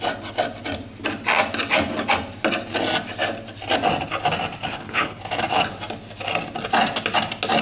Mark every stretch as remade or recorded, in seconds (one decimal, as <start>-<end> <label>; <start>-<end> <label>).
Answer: 0.0-4.7 recorded; 4.7-5.2 remade; 5.2-7.6 recorded

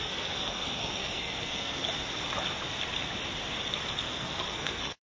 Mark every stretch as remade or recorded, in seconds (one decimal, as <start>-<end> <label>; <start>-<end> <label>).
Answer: 0.0-1.8 remade; 1.8-3.9 recorded; 3.9-5.0 remade

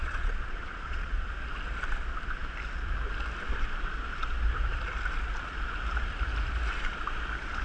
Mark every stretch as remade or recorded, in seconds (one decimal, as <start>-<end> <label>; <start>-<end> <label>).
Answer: 0.0-1.3 remade; 1.3-7.6 recorded